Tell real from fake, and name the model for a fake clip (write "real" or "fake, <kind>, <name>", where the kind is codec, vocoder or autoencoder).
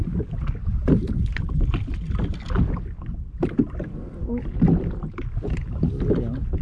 real